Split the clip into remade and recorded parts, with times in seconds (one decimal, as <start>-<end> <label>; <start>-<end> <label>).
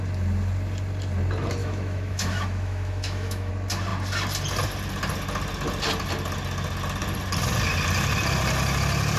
0.0-1.6 recorded; 1.6-3.5 remade; 3.5-9.2 recorded